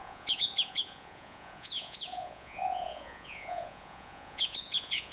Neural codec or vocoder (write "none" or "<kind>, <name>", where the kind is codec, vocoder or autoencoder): vocoder, Vocos